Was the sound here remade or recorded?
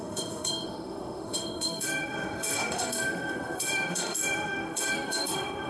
remade